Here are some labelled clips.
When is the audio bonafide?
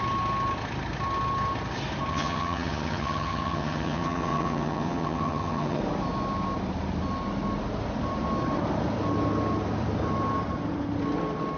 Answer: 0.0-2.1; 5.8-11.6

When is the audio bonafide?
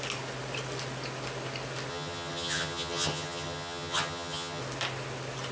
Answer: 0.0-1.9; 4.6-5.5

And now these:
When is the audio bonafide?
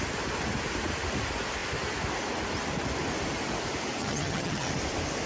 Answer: 0.0-4.0; 4.7-5.3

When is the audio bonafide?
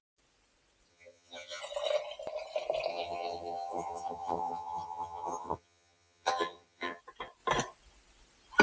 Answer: 0.0-0.9; 1.6-2.9; 7.0-8.6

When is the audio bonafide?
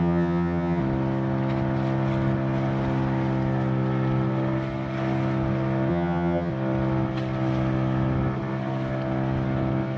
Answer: 0.8-5.9; 6.5-10.0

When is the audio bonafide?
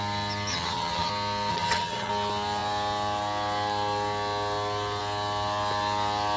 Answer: 0.0-0.5; 1.1-1.5; 2.1-6.4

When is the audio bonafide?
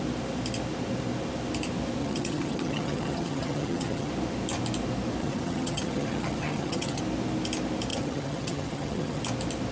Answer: 0.0-2.0; 4.1-5.2; 7.0-7.9; 9.2-9.7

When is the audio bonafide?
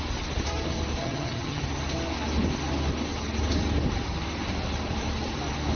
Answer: 0.0-1.0; 1.6-5.8